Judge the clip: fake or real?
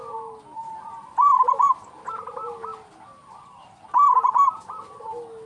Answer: real